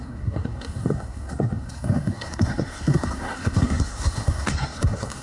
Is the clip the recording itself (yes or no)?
no